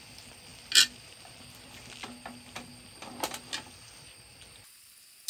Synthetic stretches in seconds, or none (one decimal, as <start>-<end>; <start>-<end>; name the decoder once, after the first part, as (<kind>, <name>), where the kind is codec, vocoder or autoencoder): none

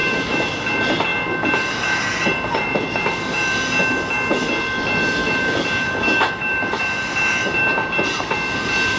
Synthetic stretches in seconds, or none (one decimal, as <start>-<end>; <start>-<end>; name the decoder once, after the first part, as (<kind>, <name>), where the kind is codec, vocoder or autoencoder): 0.0-0.5 (autoencoder, DAC-VAE); 5.2-7.0

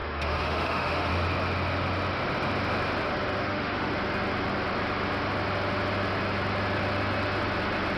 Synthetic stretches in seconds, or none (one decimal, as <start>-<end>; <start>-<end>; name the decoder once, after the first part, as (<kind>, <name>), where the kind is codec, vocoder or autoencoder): 0.0-1.1 (autoencoder, DAC-VAE); 3.4-3.9

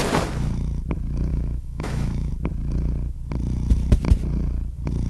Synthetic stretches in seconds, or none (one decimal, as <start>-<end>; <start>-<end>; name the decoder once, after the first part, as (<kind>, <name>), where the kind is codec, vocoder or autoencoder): 1.3-2.3 (autoencoder, DAC-VAE)

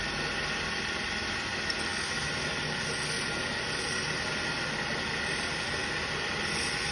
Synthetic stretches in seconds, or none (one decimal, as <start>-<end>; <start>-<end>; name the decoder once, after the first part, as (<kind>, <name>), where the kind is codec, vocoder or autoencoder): none

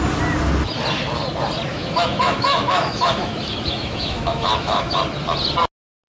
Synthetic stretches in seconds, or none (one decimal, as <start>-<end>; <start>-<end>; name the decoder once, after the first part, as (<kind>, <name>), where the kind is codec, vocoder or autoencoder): 1.7-5.0 (autoencoder, DAC-VAE)